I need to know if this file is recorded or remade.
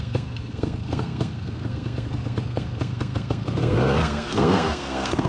remade